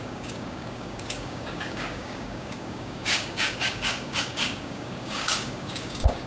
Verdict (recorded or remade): remade